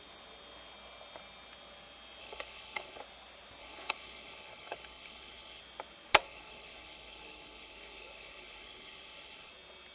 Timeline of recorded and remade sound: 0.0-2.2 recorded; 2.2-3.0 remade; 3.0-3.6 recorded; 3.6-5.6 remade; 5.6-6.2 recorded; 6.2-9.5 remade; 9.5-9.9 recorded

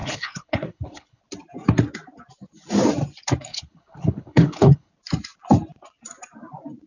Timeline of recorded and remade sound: 0.0-1.2 remade; 1.2-3.5 recorded; 3.5-4.9 remade; 4.9-6.9 recorded

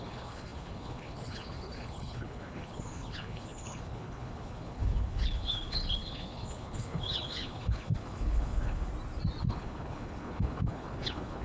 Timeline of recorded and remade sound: 0.0-8.9 remade; 8.9-9.4 recorded; 9.4-11.4 remade

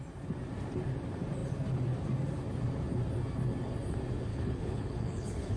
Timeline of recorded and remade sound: 0.0-4.3 recorded; 4.3-5.6 remade

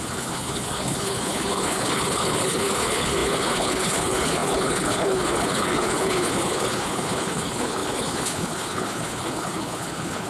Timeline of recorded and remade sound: 0.0-10.3 remade

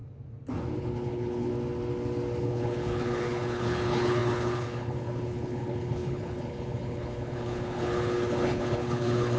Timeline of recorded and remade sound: 0.0-0.8 recorded; 0.8-1.5 remade; 1.5-2.4 recorded; 2.4-9.4 remade